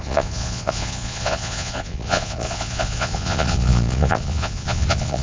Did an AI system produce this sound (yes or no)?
yes